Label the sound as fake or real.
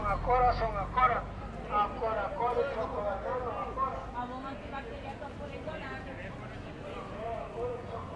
real